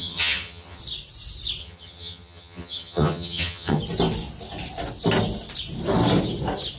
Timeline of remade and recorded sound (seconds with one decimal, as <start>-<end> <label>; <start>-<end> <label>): 0.0-0.8 remade; 0.8-1.6 recorded; 1.6-3.8 remade; 3.8-6.8 recorded

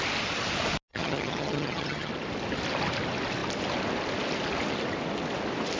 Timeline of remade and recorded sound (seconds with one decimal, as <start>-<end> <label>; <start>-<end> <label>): 0.0-0.9 recorded; 0.9-2.1 remade; 2.1-5.8 recorded

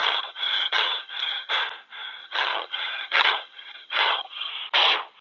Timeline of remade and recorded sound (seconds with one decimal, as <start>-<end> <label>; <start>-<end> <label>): 0.0-1.5 remade; 1.5-2.2 recorded; 2.2-4.5 remade; 4.5-5.2 recorded

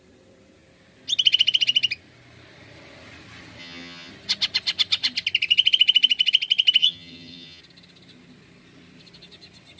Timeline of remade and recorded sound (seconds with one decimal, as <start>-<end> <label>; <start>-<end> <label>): 0.0-3.6 recorded; 3.6-4.1 remade; 4.1-6.8 recorded; 6.8-7.6 remade; 7.6-9.8 recorded

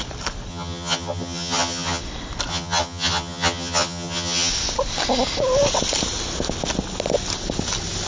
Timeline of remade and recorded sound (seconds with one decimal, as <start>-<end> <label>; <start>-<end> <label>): 0.0-0.5 recorded; 0.5-2.0 remade; 2.0-2.5 recorded; 2.5-4.5 remade; 4.5-8.1 recorded

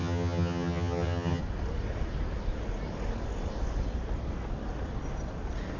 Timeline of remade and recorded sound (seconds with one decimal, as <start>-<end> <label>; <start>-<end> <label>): 0.0-1.4 remade; 1.4-5.8 recorded

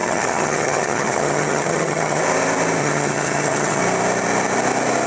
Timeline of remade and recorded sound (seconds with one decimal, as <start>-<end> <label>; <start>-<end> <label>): 0.0-2.2 remade; 2.2-2.8 recorded; 2.8-3.8 remade; 3.8-5.1 recorded

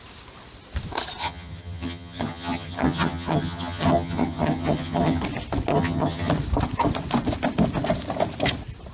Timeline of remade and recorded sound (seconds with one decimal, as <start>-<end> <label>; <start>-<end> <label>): 0.0-1.2 recorded; 1.2-5.2 remade; 5.2-5.7 recorded; 5.7-6.3 remade; 6.3-8.9 recorded